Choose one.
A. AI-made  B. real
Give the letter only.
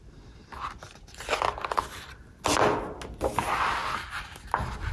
B